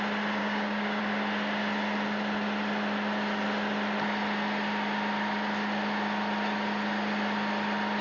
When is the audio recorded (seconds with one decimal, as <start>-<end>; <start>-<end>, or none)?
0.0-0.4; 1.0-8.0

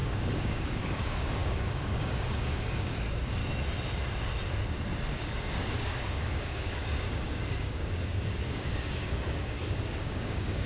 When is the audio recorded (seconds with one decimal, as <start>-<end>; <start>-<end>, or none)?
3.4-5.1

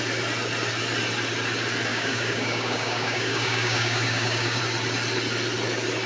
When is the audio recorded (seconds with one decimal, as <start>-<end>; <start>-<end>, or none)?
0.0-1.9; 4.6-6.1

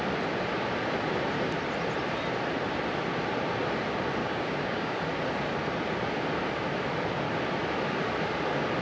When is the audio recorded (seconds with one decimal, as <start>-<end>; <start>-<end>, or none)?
0.0-4.2; 5.0-8.8

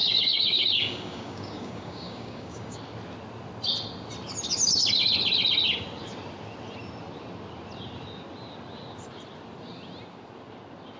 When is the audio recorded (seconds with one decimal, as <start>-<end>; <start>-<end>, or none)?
2.8-11.0

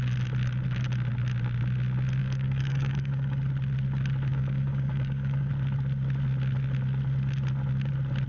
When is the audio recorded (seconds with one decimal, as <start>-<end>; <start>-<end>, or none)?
0.0-2.2; 3.4-4.3; 5.5-8.3

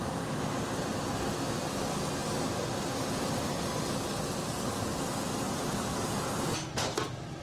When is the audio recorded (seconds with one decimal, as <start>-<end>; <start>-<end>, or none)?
0.0-7.4

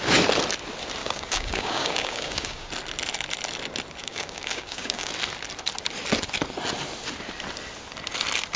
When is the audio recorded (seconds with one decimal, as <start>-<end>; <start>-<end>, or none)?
0.0-1.0; 2.7-4.0; 5.1-8.6